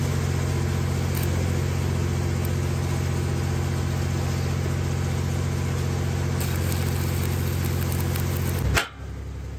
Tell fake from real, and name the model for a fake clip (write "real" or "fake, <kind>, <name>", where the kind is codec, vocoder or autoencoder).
real